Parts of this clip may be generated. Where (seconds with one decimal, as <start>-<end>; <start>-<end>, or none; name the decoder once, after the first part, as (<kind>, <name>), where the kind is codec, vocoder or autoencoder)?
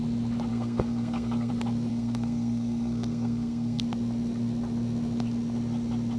0.5-1.5 (codec, SNAC); 1.9-3.8